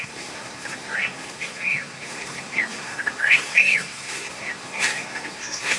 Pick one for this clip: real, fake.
fake